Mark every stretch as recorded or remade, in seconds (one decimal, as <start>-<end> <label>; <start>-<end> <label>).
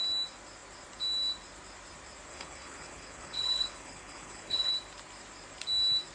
0.0-2.3 recorded; 2.3-4.7 remade; 4.7-6.1 recorded